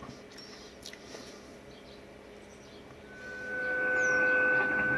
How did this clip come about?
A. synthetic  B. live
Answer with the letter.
B